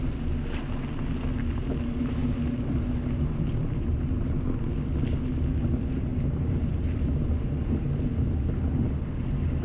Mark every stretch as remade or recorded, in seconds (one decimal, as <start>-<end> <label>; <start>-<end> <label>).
0.0-2.2 recorded; 2.2-2.9 remade; 2.9-6.1 recorded; 6.1-6.7 remade; 6.7-9.6 recorded